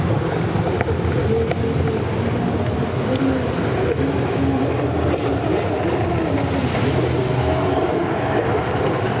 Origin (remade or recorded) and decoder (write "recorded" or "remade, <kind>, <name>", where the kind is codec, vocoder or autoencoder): recorded